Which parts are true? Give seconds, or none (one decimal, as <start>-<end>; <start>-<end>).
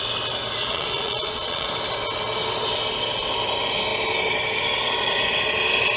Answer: 0.0-0.6; 1.7-6.0